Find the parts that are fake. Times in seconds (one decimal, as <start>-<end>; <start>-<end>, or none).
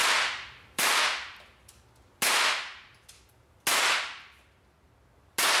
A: 0.0-1.0